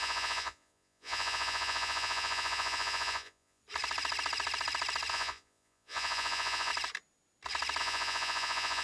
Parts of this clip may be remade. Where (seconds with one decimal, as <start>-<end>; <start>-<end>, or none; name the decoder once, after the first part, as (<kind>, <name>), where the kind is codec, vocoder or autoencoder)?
0.0-3.6 (vocoder, Vocos); 5.1-6.7; 7.8-8.8